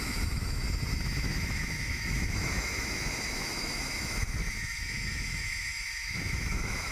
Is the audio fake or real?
fake